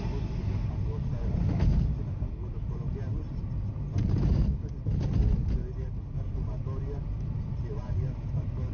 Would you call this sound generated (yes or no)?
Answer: no